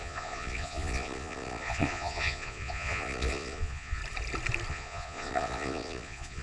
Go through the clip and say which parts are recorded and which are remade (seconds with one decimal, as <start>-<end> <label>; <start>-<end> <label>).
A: 0.0-4.0 remade; 4.0-4.7 recorded; 4.7-6.4 remade